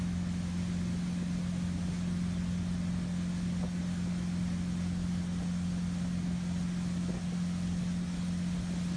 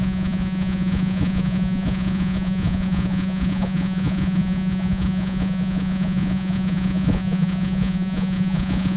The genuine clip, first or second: first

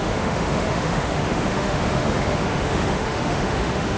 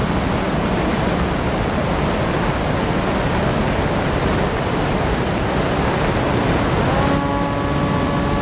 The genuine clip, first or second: second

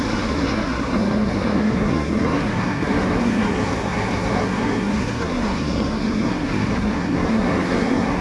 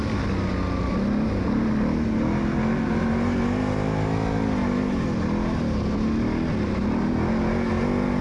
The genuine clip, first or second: second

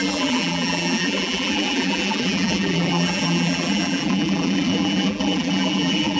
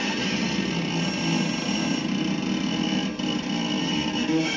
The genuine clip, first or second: second